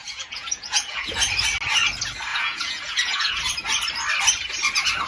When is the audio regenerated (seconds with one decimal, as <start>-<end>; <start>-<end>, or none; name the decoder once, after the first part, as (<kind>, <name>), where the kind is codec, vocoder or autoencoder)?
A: 0.0-1.2 (vocoder, Vocos); 2.3-3.4

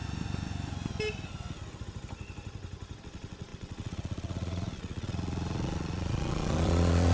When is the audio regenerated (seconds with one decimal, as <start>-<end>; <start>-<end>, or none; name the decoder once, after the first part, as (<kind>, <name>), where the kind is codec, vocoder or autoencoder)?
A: 3.0-7.1 (vocoder, Vocos)